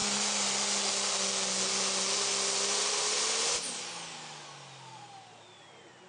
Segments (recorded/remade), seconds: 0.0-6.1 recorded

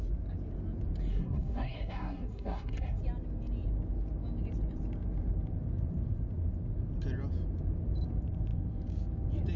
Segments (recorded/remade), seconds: 0.0-1.1 recorded; 1.1-3.0 remade; 3.0-9.6 recorded

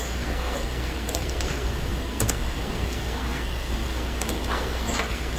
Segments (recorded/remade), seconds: 0.0-5.4 remade

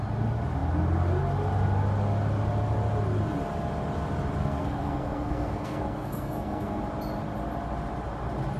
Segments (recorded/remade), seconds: 0.0-4.4 recorded; 4.4-6.8 remade; 6.8-8.6 recorded

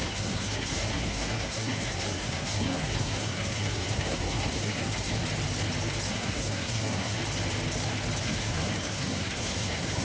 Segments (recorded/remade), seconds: 0.0-5.2 remade; 5.2-6.1 recorded; 6.1-7.2 remade; 7.2-8.2 recorded; 8.2-10.0 remade